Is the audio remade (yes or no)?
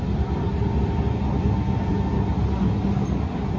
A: no